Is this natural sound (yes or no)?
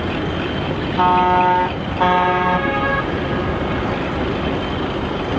yes